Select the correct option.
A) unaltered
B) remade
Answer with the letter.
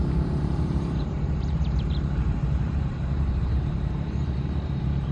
B